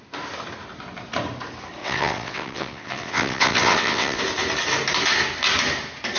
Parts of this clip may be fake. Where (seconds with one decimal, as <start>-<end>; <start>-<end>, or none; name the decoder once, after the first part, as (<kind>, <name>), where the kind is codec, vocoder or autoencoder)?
1.8-4.2 (vocoder, WaveNeXt)